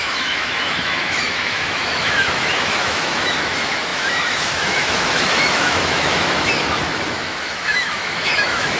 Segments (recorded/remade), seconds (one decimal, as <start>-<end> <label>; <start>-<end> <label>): 0.0-8.8 remade